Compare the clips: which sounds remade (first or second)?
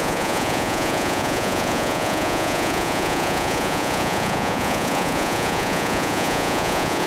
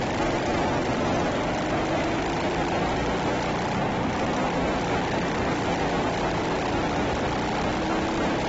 first